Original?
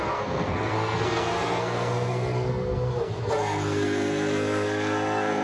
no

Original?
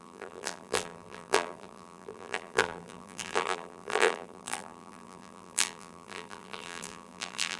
no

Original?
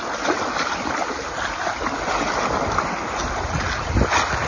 yes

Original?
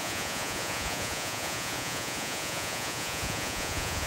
no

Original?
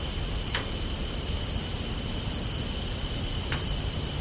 yes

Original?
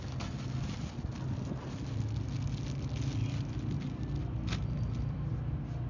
yes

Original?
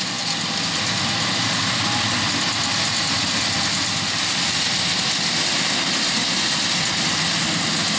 yes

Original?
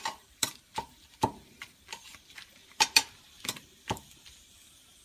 no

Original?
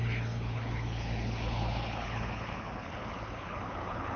no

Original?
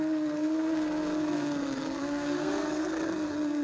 no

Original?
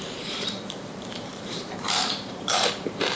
no